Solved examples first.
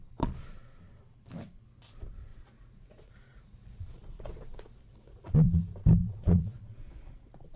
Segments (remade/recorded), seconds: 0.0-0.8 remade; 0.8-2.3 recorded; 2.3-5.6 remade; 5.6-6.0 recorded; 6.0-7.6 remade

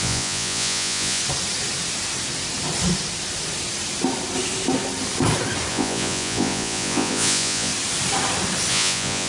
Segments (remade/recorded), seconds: 0.0-1.2 remade; 1.2-5.7 recorded; 5.7-7.7 remade; 7.7-8.7 recorded; 8.7-9.3 remade

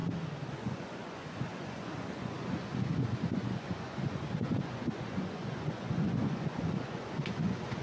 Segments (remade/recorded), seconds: 0.0-0.5 recorded; 0.5-7.8 remade

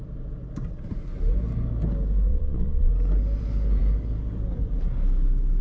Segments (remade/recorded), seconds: 0.0-2.3 recorded; 2.3-2.9 remade; 2.9-5.6 recorded

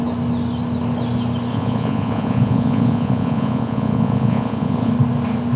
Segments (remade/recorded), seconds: 0.0-1.5 recorded; 1.5-4.9 remade; 4.9-5.6 recorded

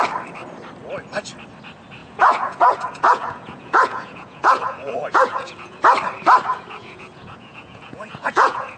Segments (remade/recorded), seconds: 0.0-2.0 recorded; 2.0-5.8 remade; 5.8-6.5 recorded; 6.5-8.8 remade

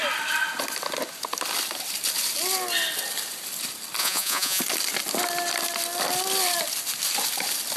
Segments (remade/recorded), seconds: 0.0-4.0 recorded; 4.0-4.6 remade; 4.6-7.8 recorded

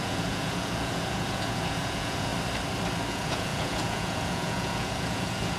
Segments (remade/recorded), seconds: 0.0-2.3 remade; 2.3-3.1 recorded; 3.1-5.6 remade